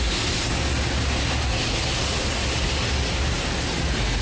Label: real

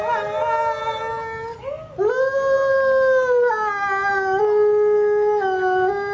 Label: real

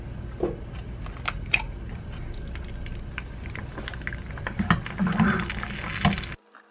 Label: real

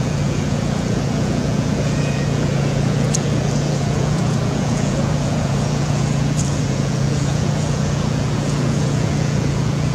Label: fake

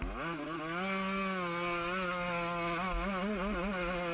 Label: real